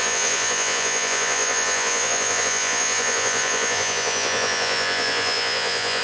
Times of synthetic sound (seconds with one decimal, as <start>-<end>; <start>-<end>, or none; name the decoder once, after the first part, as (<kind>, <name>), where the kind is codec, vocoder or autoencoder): 0.0-6.0 (vocoder, Vocos)